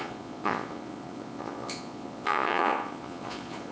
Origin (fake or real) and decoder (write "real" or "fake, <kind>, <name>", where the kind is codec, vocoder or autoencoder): fake, vocoder, Vocos